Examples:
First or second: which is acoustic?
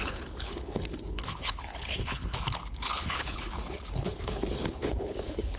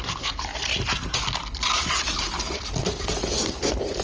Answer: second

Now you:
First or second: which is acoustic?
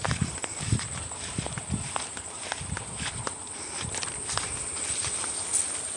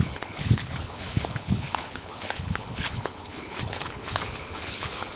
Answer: first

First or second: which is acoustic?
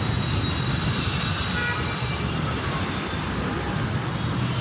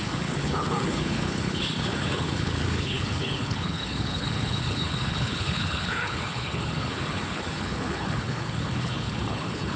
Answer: first